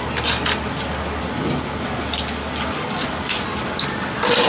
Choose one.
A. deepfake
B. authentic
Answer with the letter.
B